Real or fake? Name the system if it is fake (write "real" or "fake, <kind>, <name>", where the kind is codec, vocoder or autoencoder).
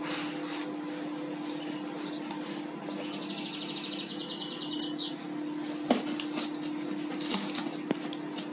real